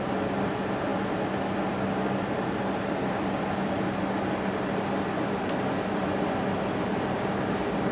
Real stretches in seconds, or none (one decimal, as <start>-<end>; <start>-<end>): 0.0-7.9